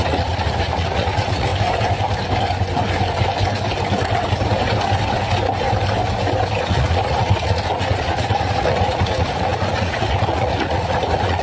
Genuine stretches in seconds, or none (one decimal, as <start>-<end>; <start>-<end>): 1.5-6.6